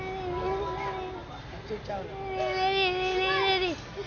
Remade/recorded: recorded